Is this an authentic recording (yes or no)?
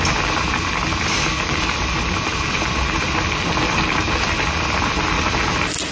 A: yes